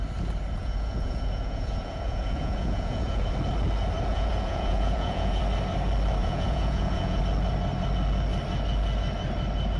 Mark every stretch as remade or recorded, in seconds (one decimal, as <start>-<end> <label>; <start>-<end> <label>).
0.0-0.6 recorded; 0.6-3.3 remade; 3.3-4.1 recorded; 4.1-5.4 remade; 5.4-6.2 recorded; 6.2-7.2 remade; 7.2-9.8 recorded